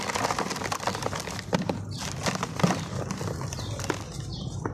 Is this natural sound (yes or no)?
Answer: no